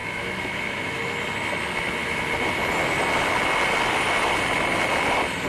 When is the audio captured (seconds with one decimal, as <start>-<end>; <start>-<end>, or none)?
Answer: 1.0-5.5